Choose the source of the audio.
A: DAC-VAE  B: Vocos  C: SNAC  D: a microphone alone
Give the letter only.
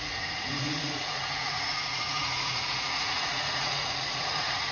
B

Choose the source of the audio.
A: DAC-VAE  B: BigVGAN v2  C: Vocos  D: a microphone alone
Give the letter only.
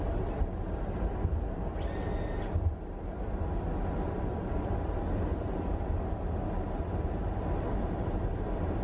D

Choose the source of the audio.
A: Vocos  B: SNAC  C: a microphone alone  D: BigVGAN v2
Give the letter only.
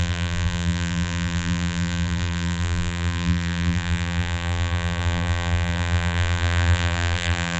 D